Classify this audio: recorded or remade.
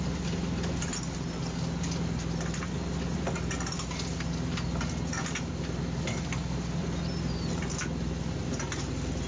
recorded